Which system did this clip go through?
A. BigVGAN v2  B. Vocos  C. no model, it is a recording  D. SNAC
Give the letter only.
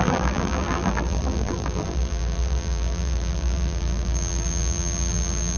A